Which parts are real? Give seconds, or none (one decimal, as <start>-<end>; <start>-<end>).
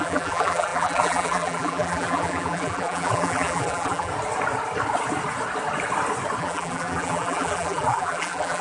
4.1-6.4